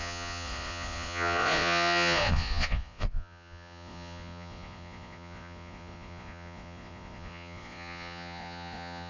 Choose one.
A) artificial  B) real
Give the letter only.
A